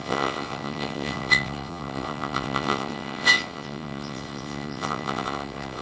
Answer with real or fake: fake